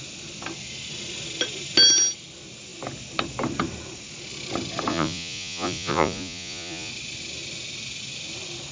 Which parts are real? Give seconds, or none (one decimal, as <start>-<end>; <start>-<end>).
0.0-4.9; 6.9-8.7